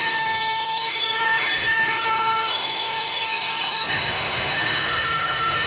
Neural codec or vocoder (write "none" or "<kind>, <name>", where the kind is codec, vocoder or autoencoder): autoencoder, DAC-VAE